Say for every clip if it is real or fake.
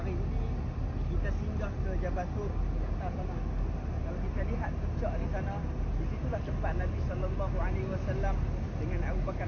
real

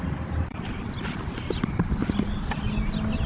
real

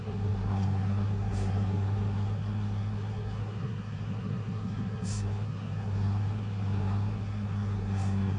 fake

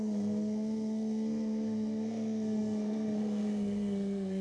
fake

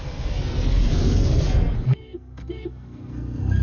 fake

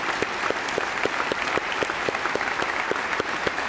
real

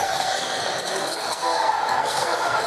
fake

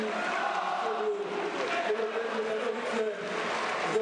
real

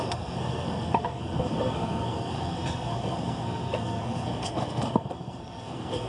fake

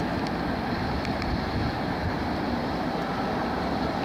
real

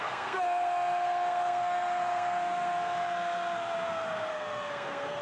fake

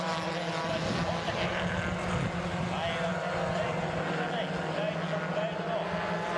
real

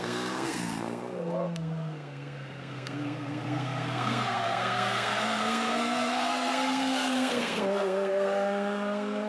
fake